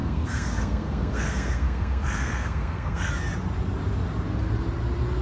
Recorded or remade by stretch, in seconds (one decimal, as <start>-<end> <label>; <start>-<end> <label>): 0.0-3.1 remade; 3.1-5.2 recorded